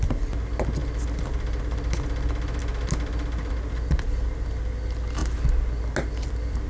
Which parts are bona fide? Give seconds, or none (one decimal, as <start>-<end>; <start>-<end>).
0.0-6.7